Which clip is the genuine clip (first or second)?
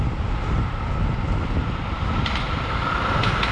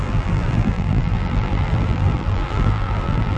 first